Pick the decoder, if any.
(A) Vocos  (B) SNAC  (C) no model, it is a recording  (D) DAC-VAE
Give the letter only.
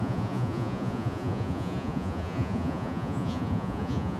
A